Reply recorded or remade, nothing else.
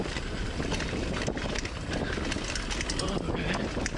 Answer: recorded